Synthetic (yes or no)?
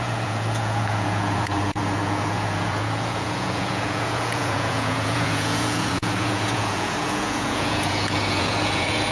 yes